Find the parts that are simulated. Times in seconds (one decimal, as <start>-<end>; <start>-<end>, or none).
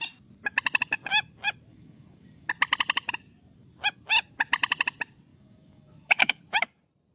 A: 1.7-2.5; 5.3-6.4